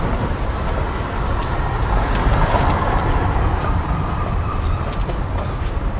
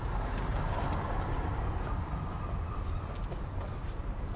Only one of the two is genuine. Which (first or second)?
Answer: second